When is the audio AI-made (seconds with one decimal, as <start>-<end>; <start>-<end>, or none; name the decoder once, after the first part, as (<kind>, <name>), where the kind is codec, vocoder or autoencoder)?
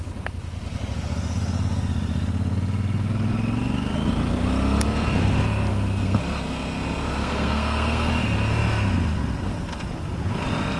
5.7-6.2 (codec, SNAC); 7.2-8.1